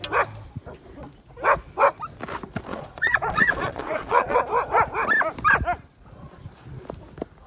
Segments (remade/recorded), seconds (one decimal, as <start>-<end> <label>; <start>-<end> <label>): 0.0-2.7 recorded; 2.7-4.4 remade; 4.4-7.5 recorded